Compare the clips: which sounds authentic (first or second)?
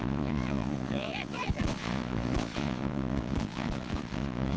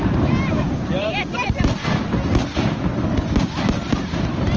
second